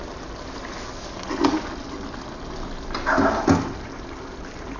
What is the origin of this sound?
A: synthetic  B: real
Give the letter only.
B